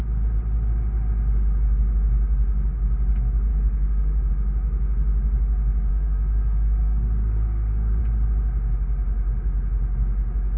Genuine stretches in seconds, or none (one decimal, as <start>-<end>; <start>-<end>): 0.0-3.5; 4.3-5.9; 8.0-10.6